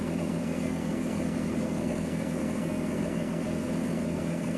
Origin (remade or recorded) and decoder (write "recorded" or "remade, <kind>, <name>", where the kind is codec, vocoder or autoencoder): remade, codec, SNAC